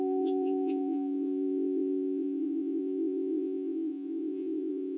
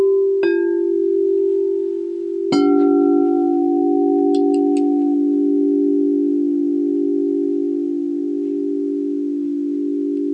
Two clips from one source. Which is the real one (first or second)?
second